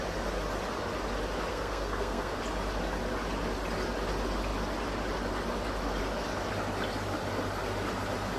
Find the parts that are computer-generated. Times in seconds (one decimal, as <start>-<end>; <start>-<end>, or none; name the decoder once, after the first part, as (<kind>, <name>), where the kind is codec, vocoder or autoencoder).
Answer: 1.5-2.4 (codec, SNAC)